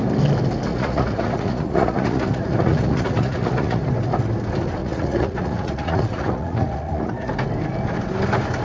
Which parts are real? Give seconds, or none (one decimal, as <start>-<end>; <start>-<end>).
0.0-0.7; 3.9-4.8; 7.3-8.6